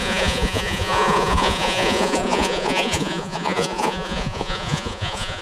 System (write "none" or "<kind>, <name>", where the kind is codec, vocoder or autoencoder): vocoder, Vocos